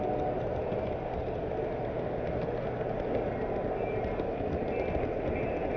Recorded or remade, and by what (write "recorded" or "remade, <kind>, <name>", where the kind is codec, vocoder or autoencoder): recorded